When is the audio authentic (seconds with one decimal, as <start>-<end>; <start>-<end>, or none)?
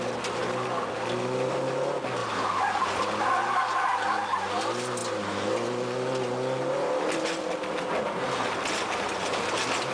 0.0-9.9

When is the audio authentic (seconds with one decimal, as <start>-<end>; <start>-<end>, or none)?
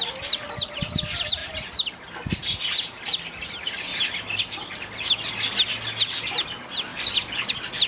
0.0-7.9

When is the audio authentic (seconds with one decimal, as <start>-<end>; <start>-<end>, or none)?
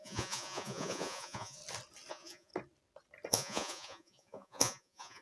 1.6-2.1; 2.5-3.3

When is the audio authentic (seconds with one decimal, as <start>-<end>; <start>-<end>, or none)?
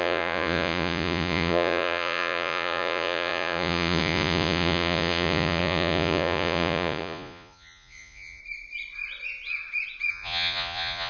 8.4-10.1